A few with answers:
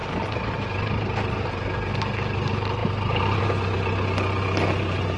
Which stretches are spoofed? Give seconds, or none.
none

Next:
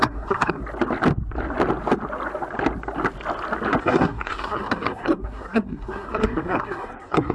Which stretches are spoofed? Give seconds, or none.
0.0-0.6 (codec, SNAC); 3.8-7.3

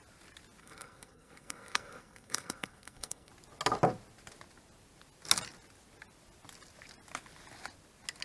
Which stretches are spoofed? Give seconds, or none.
0.6-3.3 (codec, SNAC)

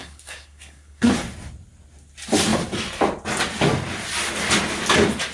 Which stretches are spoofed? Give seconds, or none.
0.0-1.1 (codec, SNAC)